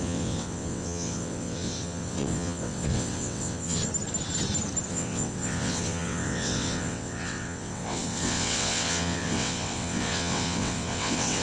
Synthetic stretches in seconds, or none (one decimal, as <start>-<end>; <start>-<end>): 0.0-3.8; 4.9-11.4